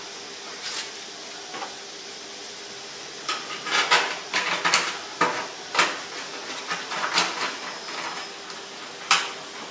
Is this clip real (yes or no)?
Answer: yes